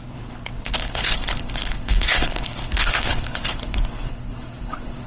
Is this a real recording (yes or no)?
no